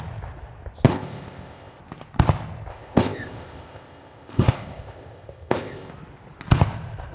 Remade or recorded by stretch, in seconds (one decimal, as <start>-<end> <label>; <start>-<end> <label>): 0.0-0.9 recorded; 0.9-1.8 remade; 1.8-2.7 recorded; 2.7-5.9 remade; 5.9-7.1 recorded